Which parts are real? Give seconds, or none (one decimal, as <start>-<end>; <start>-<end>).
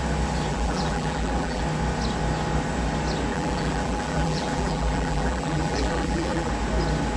0.0-0.5; 1.6-3.3; 6.5-7.2